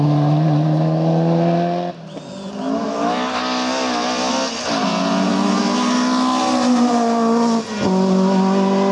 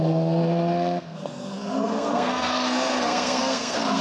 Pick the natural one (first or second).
first